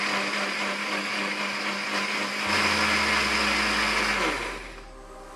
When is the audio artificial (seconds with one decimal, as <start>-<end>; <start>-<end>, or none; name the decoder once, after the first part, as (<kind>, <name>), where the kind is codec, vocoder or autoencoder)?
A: 0.8-1.4 (codec, DAC)

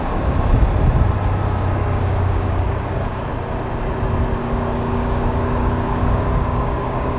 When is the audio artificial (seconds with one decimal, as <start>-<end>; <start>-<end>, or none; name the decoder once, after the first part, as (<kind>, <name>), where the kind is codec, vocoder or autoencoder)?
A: 1.8-3.3 (codec, DAC); 4.4-7.2